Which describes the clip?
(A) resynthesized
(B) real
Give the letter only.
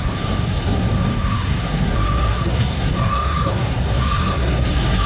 A